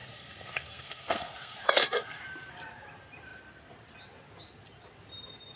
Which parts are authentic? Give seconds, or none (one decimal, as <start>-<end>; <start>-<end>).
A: 2.2-5.6